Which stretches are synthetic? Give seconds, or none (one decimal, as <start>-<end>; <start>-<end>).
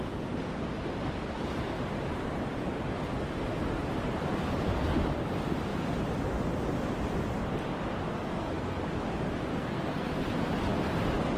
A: 8.1-8.8; 9.5-10.1